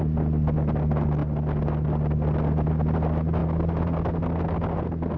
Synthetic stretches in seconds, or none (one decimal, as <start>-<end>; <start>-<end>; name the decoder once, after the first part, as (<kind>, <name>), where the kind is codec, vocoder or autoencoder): none